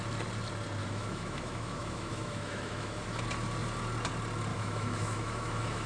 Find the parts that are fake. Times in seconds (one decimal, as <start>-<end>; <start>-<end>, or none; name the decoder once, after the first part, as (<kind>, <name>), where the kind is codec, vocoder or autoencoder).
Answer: 0.8-3.2 (autoencoder, DAC-VAE); 4.5-5.9